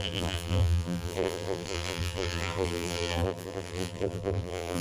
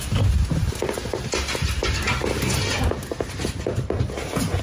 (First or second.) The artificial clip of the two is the first